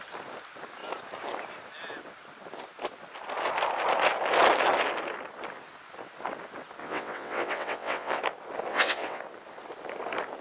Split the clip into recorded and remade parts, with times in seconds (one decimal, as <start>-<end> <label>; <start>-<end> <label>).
0.0-6.8 recorded; 6.8-8.2 remade; 8.2-8.7 recorded; 8.7-9.2 remade; 9.2-10.4 recorded